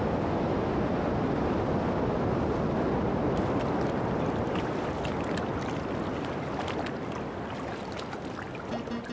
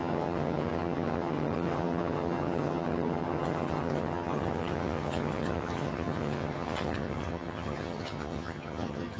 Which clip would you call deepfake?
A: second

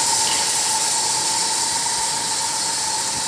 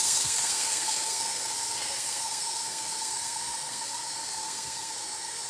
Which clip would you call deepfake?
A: second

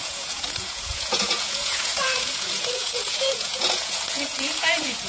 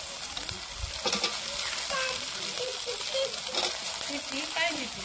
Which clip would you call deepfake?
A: first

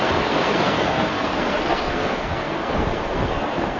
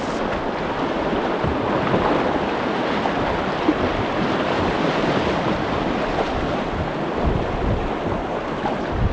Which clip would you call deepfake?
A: first